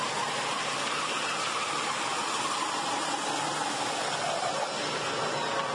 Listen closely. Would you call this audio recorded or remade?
recorded